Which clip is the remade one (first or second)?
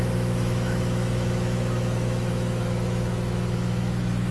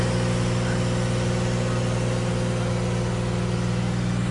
first